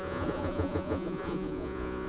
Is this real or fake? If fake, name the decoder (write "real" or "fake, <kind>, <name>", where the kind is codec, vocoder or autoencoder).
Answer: fake, vocoder, Vocos